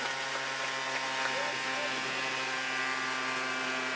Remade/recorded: recorded